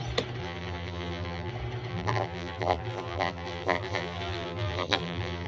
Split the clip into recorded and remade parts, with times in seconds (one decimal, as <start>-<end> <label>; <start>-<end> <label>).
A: 0.0-0.4 recorded; 0.4-1.5 remade; 1.5-1.9 recorded; 1.9-5.5 remade